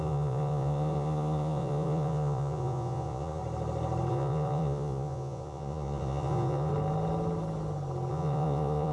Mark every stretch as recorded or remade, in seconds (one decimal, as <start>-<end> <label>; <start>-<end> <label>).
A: 0.0-3.4 remade; 3.4-4.1 recorded; 4.1-6.7 remade; 6.7-8.1 recorded; 8.1-8.9 remade